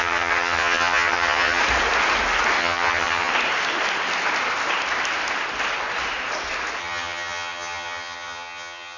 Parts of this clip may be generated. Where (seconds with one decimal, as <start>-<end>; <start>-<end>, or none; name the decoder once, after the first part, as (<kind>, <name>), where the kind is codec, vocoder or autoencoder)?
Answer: 0.0-1.6 (vocoder, HiFi-GAN); 2.6-3.3; 6.8-9.0